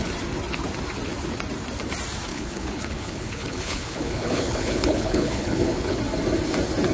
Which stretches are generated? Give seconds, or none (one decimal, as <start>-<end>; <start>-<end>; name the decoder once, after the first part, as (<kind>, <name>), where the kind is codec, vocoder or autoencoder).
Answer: 2.3-6.0 (codec, HILCodec)